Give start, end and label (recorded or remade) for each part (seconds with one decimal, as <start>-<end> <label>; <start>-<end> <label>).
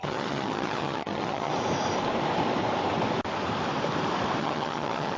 0.0-1.5 remade; 1.5-4.4 recorded; 4.4-5.2 remade